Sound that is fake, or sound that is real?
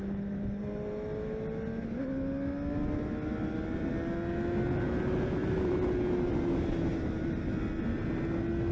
real